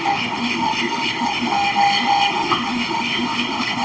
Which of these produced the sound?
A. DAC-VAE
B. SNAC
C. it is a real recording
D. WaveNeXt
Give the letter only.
A